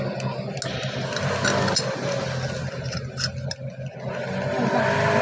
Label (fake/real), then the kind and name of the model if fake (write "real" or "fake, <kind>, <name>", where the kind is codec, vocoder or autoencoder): real